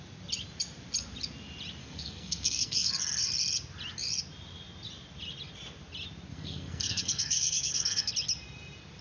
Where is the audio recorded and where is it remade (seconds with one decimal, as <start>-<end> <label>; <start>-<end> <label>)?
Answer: 0.0-1.8 recorded; 1.8-2.9 remade; 2.9-6.3 recorded; 6.3-8.1 remade; 8.1-9.0 recorded